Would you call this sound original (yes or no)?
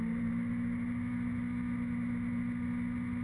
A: yes